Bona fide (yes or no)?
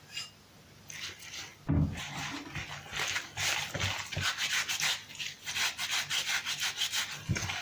yes